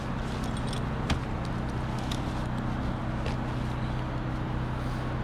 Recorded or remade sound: recorded